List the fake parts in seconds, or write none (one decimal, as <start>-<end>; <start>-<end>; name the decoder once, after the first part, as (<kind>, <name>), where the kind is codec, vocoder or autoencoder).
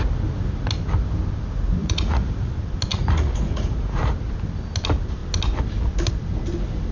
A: 1.8-2.5 (vocoder, Vocos); 2.9-4.0